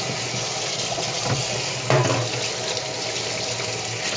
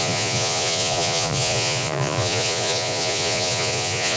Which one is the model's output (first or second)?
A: second